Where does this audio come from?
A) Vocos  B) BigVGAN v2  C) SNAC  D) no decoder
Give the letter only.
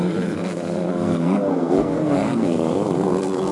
C